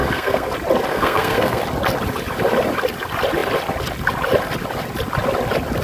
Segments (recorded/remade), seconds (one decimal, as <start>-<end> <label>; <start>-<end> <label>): 0.0-0.5 remade; 0.5-0.9 recorded; 0.9-1.6 remade; 1.6-5.8 recorded